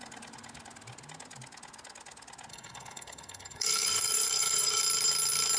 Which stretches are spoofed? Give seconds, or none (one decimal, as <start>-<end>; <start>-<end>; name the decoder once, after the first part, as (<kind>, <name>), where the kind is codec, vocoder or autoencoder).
2.5-4.8 (codec, SNAC)